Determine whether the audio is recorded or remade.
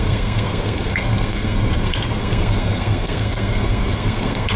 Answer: remade